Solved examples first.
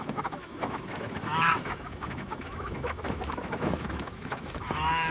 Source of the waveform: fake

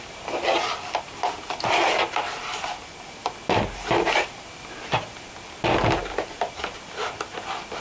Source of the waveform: real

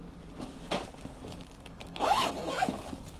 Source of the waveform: fake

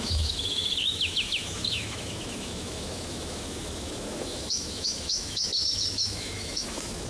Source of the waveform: fake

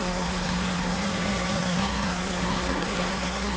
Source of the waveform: fake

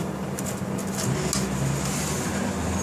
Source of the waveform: real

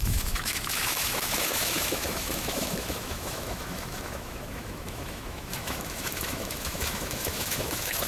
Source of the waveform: fake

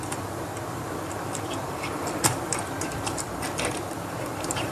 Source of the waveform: fake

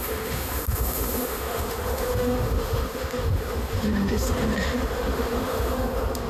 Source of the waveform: fake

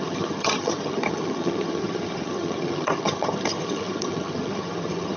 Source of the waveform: fake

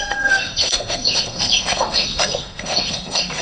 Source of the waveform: fake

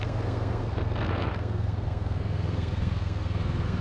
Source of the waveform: fake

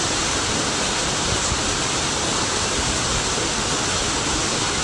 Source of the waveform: real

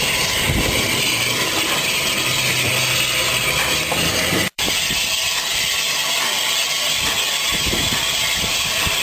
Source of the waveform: fake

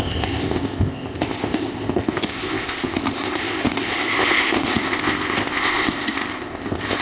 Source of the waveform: fake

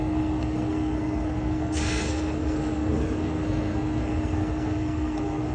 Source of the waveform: fake